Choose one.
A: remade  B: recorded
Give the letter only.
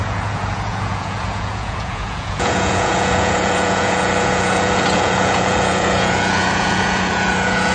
A